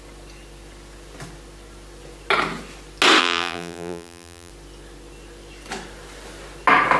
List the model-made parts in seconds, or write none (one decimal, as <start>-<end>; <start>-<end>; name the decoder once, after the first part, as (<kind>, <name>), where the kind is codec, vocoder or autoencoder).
3.2-4.5 (vocoder, BigVGAN v2)